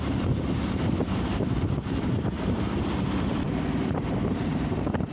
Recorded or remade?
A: remade